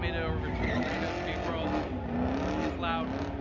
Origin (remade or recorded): recorded